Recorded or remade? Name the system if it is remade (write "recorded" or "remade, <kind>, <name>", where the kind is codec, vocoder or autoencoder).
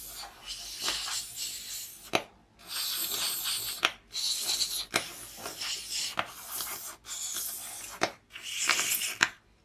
recorded